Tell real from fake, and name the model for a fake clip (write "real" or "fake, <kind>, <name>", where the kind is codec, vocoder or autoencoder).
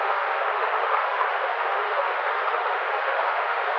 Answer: fake, autoencoder, DAC-VAE